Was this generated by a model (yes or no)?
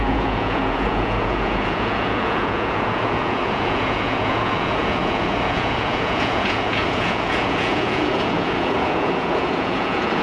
yes